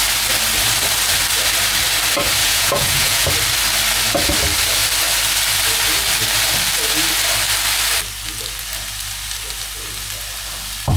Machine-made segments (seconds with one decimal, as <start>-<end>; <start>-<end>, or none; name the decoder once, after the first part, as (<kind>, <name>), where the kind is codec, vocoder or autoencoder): 2.4-3.3 (vocoder, Vocos)